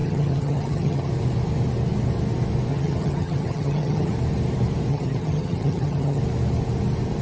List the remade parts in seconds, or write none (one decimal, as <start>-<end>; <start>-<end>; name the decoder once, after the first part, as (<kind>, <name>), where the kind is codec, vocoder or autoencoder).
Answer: 0.0-1.1 (vocoder, HiFi-GAN); 2.7-4.1; 4.9-6.2